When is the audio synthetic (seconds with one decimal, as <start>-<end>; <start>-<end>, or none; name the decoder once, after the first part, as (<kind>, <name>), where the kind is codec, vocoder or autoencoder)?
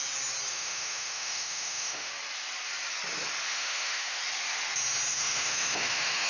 0.5-2.1 (autoencoder, DAC-VAE); 3.5-4.2; 5.1-6.3